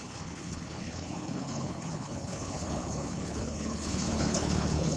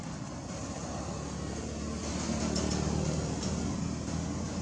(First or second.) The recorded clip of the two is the second